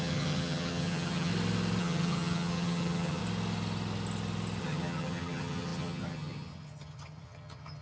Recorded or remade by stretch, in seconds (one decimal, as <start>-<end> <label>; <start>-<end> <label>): 0.0-1.3 remade; 1.3-1.8 recorded; 1.8-3.2 remade; 3.2-4.6 recorded; 4.6-7.8 remade